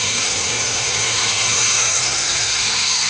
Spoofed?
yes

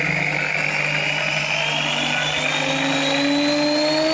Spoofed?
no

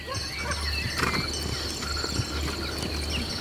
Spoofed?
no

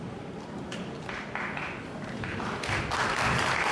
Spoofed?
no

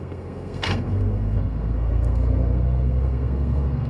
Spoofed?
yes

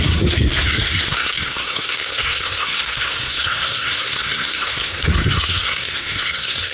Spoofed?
yes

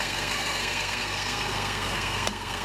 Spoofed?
yes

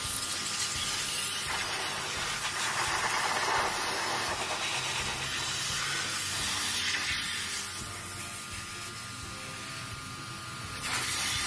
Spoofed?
no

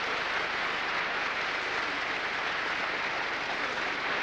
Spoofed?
no